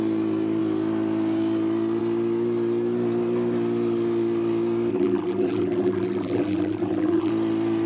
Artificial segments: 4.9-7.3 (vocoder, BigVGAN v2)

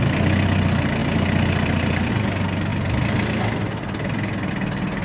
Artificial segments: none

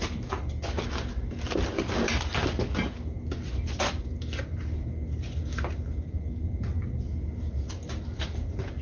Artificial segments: none

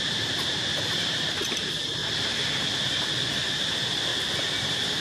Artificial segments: 0.0-2.0 (vocoder, BigVGAN v2); 3.3-4.1; 4.6-5.0

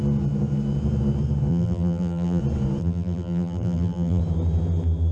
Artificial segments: 1.5-2.4 (vocoder, BigVGAN v2); 2.8-4.2

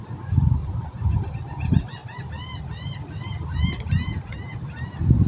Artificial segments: 0.6-1.3 (vocoder, BigVGAN v2)

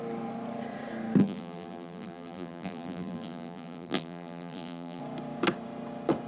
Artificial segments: 1.2-5.0 (vocoder, BigVGAN v2)

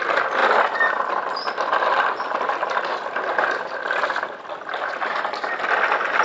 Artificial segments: none